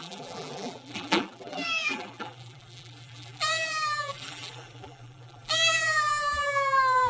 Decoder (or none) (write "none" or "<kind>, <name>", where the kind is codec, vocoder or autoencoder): vocoder, BigVGAN v2